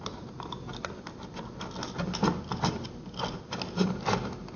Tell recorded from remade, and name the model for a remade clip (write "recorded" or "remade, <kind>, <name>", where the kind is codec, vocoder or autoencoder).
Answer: recorded